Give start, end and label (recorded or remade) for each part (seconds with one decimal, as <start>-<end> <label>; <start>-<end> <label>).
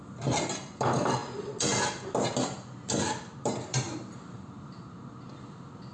0.0-3.7 recorded; 3.7-4.8 remade; 4.8-5.9 recorded